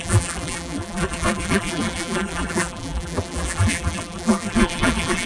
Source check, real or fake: fake